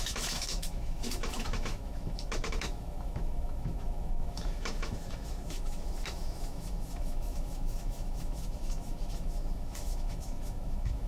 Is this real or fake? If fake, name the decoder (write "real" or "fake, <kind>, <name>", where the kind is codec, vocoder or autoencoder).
fake, autoencoder, DAC-VAE